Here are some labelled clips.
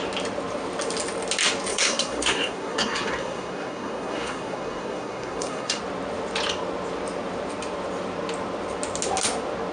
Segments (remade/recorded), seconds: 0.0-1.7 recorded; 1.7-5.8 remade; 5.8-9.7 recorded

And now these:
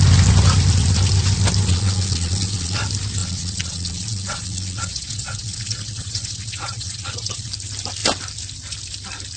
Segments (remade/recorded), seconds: 0.0-1.7 recorded; 1.7-2.8 remade; 2.8-3.2 recorded; 3.2-7.5 remade; 7.5-9.4 recorded

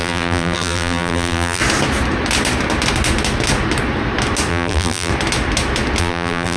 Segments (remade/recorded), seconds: 0.0-1.6 remade; 1.6-4.5 recorded; 4.5-5.1 remade; 5.1-6.0 recorded; 6.0-6.6 remade

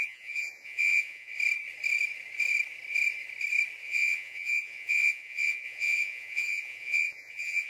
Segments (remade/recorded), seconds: 0.0-1.3 remade; 1.3-3.8 recorded; 3.8-7.7 remade